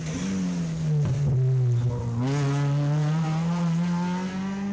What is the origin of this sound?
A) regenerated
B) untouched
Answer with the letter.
B